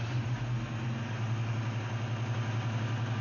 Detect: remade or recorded recorded